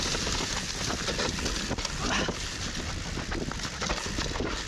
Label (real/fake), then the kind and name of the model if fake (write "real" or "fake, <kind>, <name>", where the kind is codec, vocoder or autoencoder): real